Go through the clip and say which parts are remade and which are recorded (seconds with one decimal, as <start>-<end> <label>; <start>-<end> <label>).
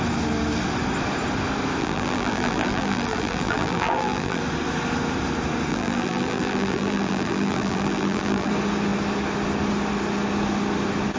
0.0-1.8 recorded; 1.8-4.4 remade; 4.4-5.7 recorded; 5.7-8.5 remade; 8.5-11.2 recorded